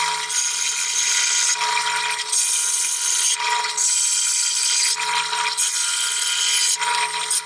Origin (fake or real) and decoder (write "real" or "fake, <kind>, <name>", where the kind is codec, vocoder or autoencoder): real